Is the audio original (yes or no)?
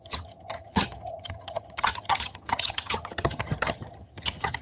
no